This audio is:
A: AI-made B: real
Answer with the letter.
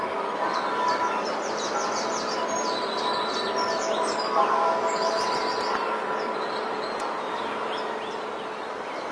A